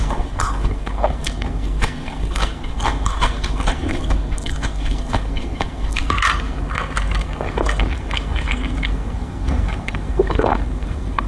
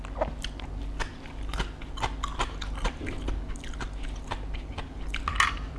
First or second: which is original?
second